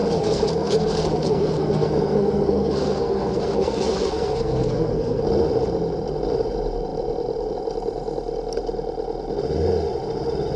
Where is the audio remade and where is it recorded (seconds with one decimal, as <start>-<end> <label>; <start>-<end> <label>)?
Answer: 0.0-5.2 remade; 5.2-10.6 recorded